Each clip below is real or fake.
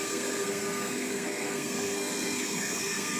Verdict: fake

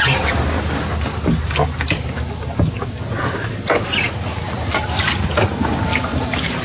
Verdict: real